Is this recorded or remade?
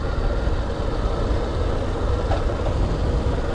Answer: recorded